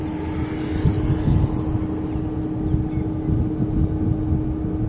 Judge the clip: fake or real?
real